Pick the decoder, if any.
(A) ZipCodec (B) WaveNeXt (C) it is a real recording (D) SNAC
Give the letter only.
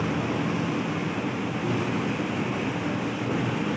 C